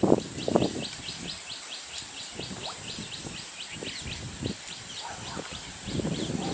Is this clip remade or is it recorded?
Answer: remade